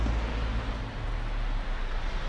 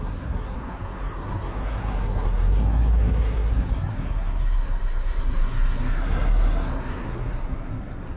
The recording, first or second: first